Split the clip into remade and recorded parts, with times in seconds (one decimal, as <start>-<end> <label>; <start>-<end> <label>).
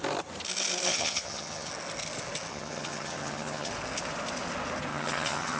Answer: 0.0-0.9 recorded; 0.9-1.7 remade; 1.7-2.5 recorded; 2.5-3.7 remade; 3.7-4.9 recorded; 4.9-5.6 remade